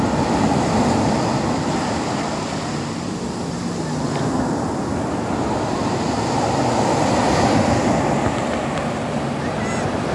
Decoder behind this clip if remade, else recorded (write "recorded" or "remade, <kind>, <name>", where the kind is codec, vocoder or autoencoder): recorded